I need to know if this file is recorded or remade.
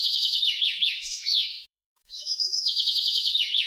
remade